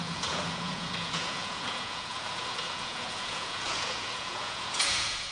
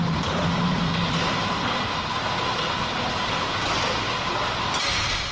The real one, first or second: second